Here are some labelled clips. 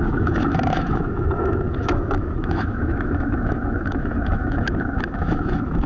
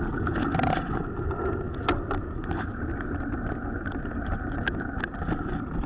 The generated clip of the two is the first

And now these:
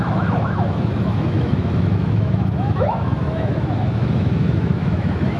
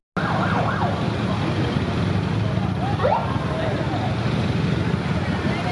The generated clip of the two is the first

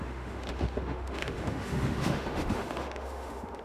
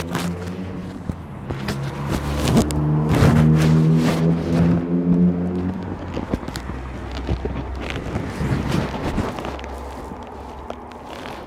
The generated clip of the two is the first